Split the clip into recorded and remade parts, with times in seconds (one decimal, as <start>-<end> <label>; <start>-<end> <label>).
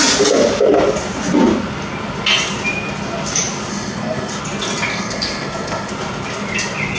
0.0-3.7 recorded; 3.7-4.4 remade; 4.4-4.9 recorded; 4.9-5.9 remade; 5.9-7.0 recorded